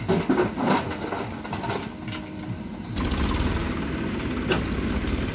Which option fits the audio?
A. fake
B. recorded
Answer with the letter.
B